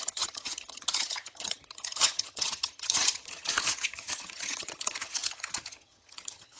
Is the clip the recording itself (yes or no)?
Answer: no